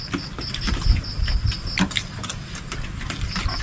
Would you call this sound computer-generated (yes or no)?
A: no